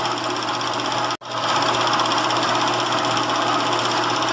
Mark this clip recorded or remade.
recorded